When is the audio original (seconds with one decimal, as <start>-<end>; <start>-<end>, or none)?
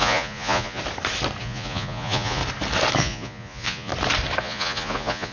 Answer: 0.8-1.4; 2.4-3.0; 3.9-4.4